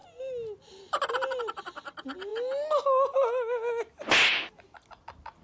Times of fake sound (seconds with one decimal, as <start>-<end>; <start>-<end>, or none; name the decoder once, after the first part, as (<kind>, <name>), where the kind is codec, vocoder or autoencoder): none